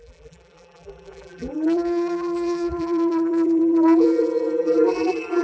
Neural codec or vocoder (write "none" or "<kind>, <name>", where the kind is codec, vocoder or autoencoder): vocoder, BigVGAN v2